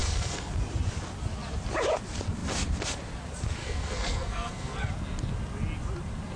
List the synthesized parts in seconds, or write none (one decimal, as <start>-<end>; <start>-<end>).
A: 0.0-0.5; 3.6-4.9